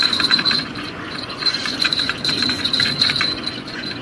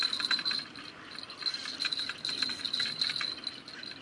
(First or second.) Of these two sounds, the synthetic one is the first